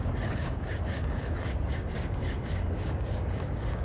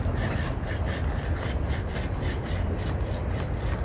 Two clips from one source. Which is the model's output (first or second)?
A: first